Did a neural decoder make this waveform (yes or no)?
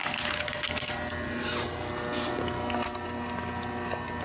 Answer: no